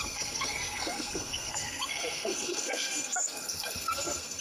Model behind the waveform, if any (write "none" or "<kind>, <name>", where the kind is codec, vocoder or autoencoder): codec, SNAC